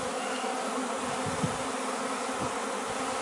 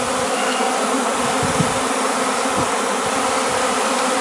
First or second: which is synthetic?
second